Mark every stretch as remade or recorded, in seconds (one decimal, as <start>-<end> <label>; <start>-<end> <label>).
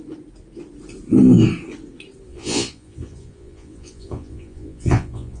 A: 0.0-2.3 recorded; 2.3-5.4 remade